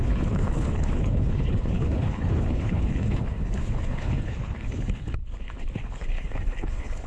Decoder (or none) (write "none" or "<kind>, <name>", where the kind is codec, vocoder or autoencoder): codec, HILCodec